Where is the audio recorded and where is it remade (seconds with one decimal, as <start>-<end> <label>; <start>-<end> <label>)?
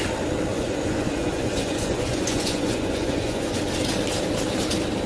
0.0-0.5 recorded; 0.5-3.6 remade; 3.6-5.1 recorded